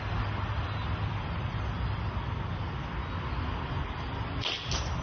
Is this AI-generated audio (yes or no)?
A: no